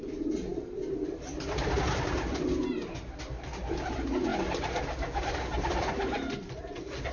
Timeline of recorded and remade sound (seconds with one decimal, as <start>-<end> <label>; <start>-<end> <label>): 0.0-7.1 recorded